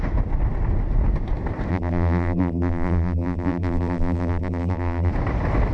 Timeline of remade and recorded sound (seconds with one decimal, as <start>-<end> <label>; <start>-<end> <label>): 0.0-1.7 recorded; 1.7-5.1 remade; 5.1-5.7 recorded